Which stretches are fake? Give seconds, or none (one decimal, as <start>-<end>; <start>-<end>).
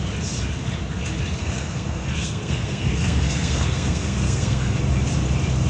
1.4-4.8